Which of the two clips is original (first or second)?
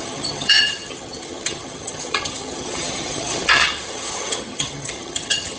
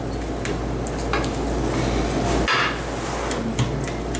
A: second